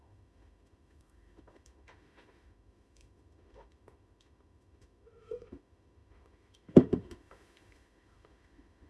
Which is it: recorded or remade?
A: remade